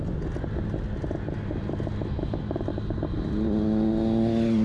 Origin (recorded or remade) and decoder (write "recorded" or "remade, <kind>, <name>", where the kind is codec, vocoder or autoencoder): recorded